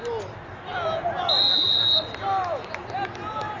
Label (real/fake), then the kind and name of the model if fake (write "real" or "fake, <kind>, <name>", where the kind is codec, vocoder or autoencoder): real